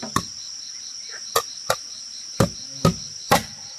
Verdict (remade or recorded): recorded